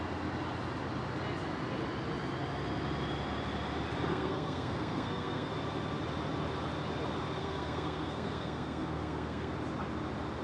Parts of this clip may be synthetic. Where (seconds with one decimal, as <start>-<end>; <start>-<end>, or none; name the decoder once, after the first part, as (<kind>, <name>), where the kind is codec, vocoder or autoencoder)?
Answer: 4.1-5.5 (codec, SNAC); 7.4-9.5